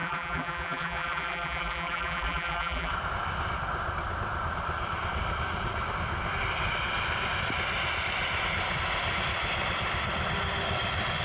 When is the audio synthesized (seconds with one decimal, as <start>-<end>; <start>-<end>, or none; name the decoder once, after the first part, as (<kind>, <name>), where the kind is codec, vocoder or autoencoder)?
0.0-2.9 (vocoder, BigVGAN v2)